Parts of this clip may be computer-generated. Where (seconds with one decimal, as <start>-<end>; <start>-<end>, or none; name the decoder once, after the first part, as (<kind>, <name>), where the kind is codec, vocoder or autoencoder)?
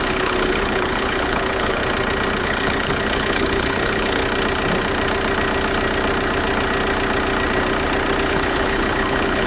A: 0.0-1.8 (codec, HILCodec); 2.4-4.2; 8.3-9.5